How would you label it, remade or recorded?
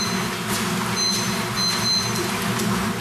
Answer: recorded